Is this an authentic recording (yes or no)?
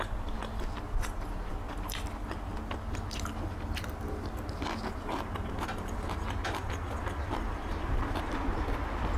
yes